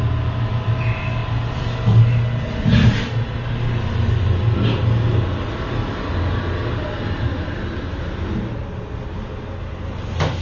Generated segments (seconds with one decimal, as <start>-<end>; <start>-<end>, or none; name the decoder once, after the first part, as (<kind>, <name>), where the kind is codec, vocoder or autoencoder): none